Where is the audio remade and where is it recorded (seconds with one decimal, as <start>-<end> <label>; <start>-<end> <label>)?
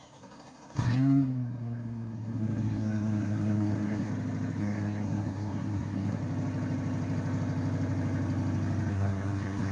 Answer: 0.0-4.1 remade; 4.1-4.6 recorded; 4.6-6.2 remade; 6.2-8.9 recorded; 8.9-9.7 remade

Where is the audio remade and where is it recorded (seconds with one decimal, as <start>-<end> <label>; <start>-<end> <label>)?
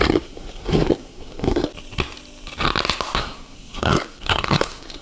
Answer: 0.0-1.7 remade; 1.7-3.2 recorded; 3.2-5.0 remade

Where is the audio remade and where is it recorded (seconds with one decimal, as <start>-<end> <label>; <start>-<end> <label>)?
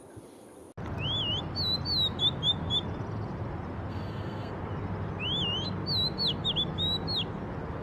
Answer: 0.0-3.9 recorded; 3.9-4.5 remade; 4.5-7.8 recorded